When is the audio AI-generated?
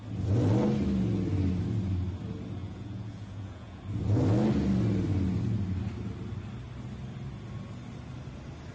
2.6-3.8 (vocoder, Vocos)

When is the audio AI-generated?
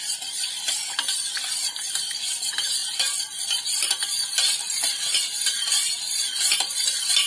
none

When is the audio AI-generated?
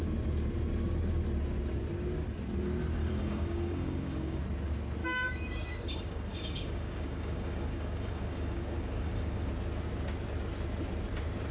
3.0-4.4 (codec, DAC); 5.0-9.5